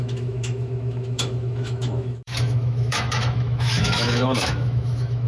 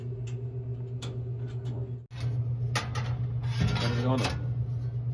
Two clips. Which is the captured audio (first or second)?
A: second